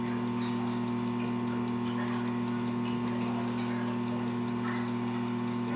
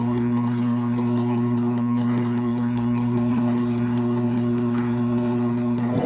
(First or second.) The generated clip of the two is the second